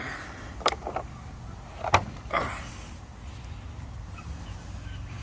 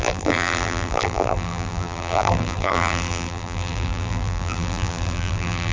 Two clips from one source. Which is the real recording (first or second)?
first